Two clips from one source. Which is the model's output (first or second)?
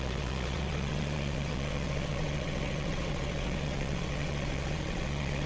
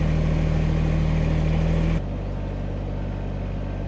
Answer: first